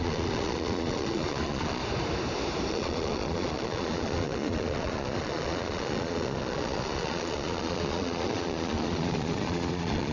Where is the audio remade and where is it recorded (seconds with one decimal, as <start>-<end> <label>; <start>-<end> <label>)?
0.0-1.8 remade; 1.8-2.7 recorded; 2.7-10.1 remade